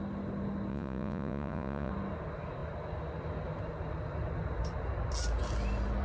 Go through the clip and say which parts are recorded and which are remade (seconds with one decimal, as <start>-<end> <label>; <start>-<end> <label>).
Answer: 0.0-0.7 recorded; 0.7-1.9 remade; 1.9-6.0 recorded